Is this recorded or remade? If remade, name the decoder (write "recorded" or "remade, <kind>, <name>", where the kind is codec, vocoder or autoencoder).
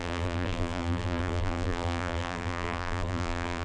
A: remade, vocoder, BigVGAN v2